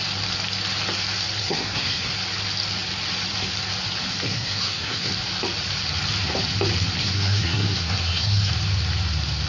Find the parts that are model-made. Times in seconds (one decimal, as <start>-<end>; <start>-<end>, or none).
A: 1.4-2.1; 4.3-5.1; 7.0-8.5